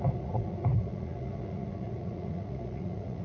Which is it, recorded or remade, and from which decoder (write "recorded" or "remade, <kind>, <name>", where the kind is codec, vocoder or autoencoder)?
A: remade, vocoder, Vocos